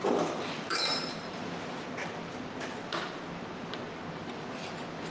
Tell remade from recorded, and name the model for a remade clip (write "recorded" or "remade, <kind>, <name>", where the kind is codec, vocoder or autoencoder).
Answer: recorded